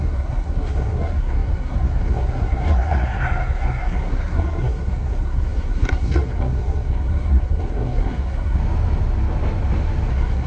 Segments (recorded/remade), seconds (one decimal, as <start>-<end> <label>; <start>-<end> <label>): 0.0-8.6 remade; 8.6-10.1 recorded; 10.1-10.5 remade